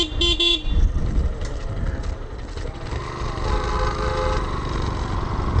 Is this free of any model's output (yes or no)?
yes